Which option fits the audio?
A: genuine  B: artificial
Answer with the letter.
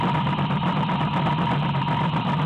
B